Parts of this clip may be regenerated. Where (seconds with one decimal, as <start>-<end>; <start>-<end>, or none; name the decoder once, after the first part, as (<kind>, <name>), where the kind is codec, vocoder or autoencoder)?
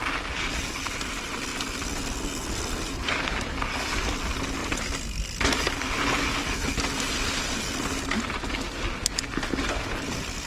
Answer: none